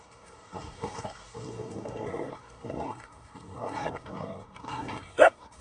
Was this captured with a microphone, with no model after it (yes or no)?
no